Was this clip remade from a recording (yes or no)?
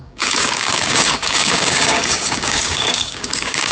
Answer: yes